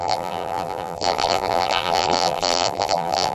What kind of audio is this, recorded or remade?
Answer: remade